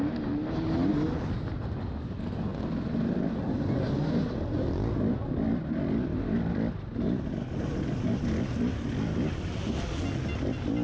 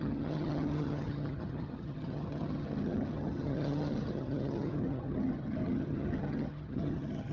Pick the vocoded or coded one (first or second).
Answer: second